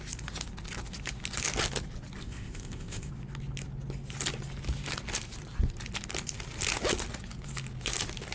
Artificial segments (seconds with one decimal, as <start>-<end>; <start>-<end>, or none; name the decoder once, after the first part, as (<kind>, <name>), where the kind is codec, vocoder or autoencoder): 2.2-3.1 (codec, ZipCodec)